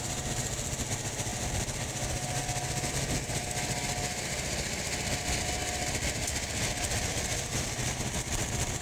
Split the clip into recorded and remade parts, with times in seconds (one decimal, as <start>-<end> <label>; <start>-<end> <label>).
0.0-8.8 recorded